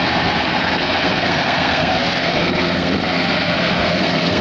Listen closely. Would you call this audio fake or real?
fake